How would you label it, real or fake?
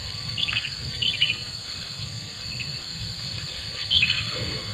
fake